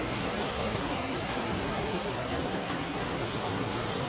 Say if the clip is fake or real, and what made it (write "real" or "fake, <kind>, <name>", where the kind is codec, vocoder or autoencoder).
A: fake, codec, SNAC